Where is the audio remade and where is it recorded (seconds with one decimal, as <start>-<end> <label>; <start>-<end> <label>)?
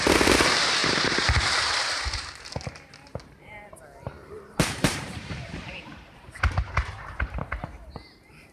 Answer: 0.0-0.8 recorded; 0.8-3.7 remade; 3.7-4.2 recorded; 4.2-7.5 remade; 7.5-8.5 recorded